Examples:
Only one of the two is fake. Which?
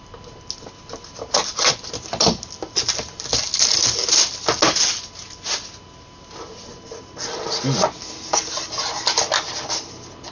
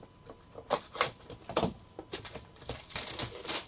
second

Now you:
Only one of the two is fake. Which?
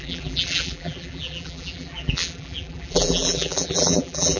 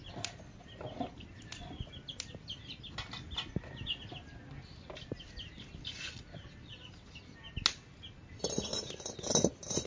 first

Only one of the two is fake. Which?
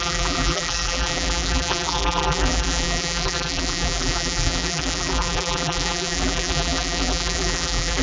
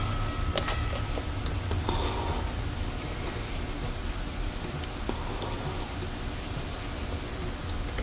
first